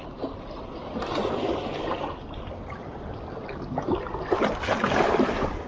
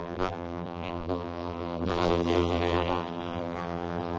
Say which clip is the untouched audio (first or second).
first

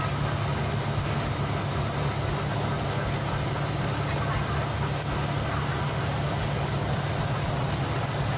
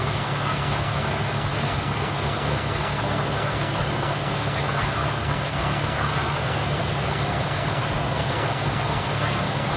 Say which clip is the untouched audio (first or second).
first